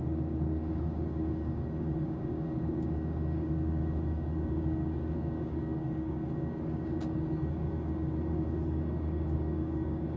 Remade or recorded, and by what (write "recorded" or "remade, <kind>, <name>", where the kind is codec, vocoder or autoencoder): remade, codec, DAC